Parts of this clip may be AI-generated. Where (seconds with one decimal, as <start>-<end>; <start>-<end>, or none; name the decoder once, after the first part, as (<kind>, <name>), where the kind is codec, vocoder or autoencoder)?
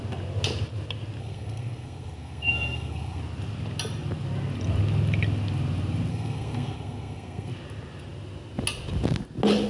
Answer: 1.2-3.2 (codec, SNAC); 6.1-7.5